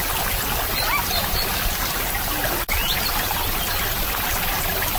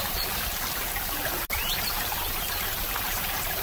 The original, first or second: first